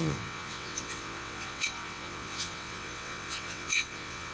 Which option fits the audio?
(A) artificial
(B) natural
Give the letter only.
A